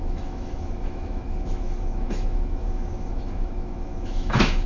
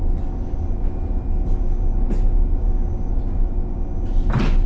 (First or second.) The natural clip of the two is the second